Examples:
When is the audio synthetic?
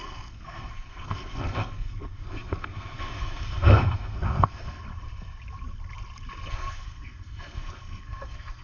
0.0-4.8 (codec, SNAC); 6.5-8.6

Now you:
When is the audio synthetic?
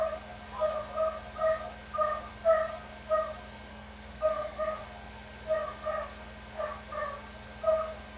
3.7-4.8 (codec, SNAC)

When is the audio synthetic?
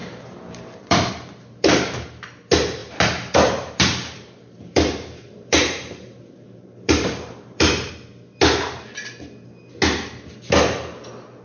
0.0-1.1 (vocoder, BigVGAN v2); 2.8-7.9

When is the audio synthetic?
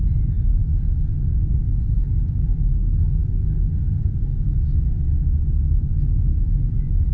none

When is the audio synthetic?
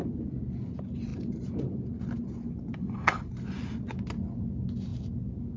2.8-3.3 (codec, HILCodec)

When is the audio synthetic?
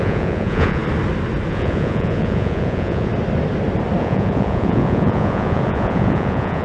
0.0-0.8 (vocoder, Vocos); 1.5-3.1; 4.0-6.6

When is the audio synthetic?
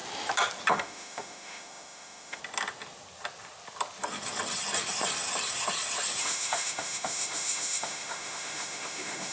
0.7-2.4 (autoencoder, DAC-VAE); 6.2-9.3